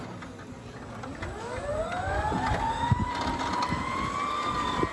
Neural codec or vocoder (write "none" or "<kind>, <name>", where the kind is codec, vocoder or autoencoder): none